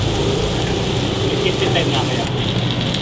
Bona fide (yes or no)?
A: yes